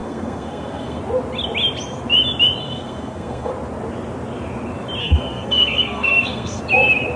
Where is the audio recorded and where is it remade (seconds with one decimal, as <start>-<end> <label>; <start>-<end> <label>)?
0.0-1.0 remade; 1.0-2.6 recorded; 2.6-3.5 remade; 3.5-5.0 recorded; 5.0-6.6 remade; 6.6-7.2 recorded